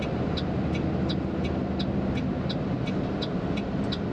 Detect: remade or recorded recorded